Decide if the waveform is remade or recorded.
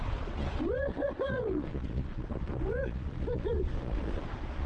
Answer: remade